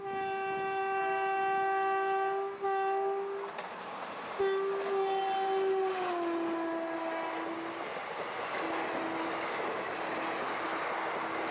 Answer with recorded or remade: recorded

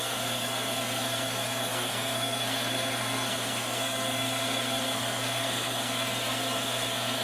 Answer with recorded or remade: remade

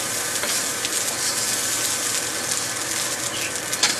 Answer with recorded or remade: recorded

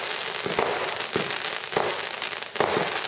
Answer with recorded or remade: recorded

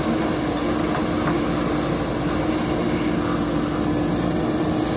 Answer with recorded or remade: recorded